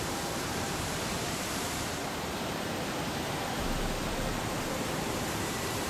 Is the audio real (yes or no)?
no